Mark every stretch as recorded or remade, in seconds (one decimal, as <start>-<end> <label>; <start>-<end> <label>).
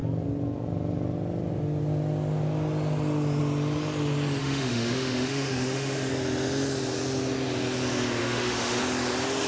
0.0-4.4 recorded; 4.4-6.1 remade; 6.1-8.2 recorded; 8.2-8.8 remade; 8.8-9.5 recorded